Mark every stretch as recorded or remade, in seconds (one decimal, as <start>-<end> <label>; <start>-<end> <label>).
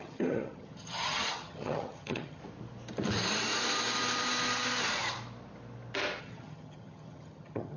0.0-2.4 remade; 2.4-6.2 recorded; 6.2-7.8 remade